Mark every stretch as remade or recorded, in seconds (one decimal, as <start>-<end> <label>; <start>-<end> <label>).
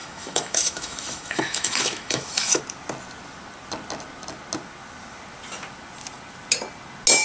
0.0-2.6 remade; 2.6-7.2 recorded